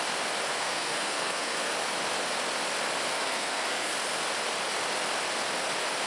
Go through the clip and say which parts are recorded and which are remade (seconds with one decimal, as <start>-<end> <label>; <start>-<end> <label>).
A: 0.0-0.5 recorded; 0.5-1.7 remade; 1.7-3.1 recorded; 3.1-3.9 remade; 3.9-6.1 recorded